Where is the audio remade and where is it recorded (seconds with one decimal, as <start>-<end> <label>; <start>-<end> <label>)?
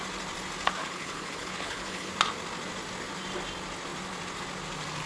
0.0-0.8 recorded; 0.8-2.1 remade; 2.1-5.1 recorded